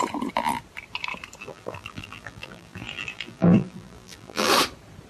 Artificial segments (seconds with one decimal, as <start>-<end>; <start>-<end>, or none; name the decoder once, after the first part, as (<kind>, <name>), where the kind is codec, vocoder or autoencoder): 1.4-4.5 (vocoder, BigVGAN v2)